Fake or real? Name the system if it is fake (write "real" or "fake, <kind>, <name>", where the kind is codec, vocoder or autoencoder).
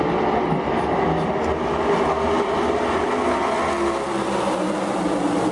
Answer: real